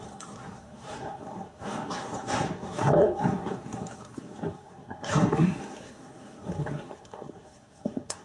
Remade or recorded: remade